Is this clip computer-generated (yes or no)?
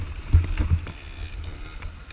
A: no